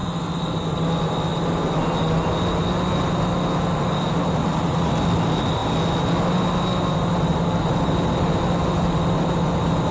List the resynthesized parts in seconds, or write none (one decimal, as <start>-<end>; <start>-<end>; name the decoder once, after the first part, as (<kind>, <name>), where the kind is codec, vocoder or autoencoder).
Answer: 4.4-4.9 (vocoder, Vocos)